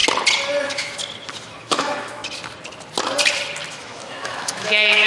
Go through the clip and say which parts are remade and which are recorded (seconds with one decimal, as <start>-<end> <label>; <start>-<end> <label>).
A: 0.0-0.6 recorded; 0.6-1.0 remade; 1.0-1.6 recorded; 1.6-2.2 remade; 2.2-3.7 recorded; 3.7-5.1 remade

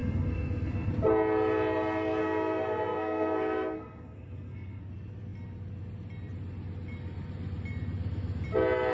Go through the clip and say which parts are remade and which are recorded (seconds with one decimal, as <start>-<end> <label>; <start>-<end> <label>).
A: 0.0-0.9 remade; 0.9-2.2 recorded; 2.2-4.8 remade; 4.8-8.9 recorded

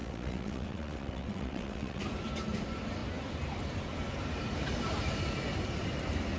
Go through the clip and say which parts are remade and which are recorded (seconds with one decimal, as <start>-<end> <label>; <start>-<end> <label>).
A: 0.0-2.0 remade; 2.0-6.4 recorded